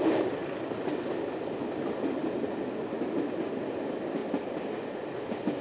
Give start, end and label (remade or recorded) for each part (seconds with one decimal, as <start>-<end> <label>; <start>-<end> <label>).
0.0-5.6 recorded